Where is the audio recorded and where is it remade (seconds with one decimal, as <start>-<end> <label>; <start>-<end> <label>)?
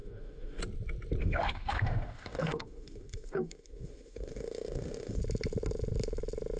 0.0-0.6 remade; 0.6-1.2 recorded; 1.2-5.2 remade; 5.2-6.6 recorded